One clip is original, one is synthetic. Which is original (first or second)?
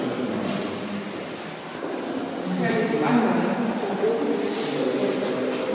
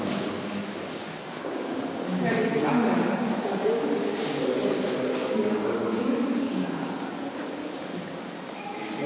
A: first